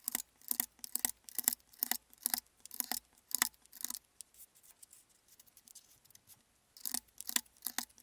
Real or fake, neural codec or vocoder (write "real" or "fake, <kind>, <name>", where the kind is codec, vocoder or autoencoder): real